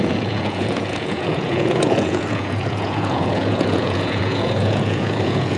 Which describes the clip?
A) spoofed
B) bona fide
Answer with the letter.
A